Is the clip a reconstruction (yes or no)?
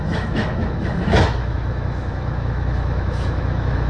yes